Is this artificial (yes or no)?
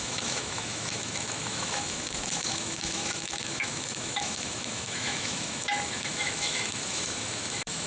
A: yes